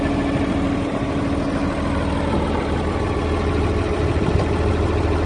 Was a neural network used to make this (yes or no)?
no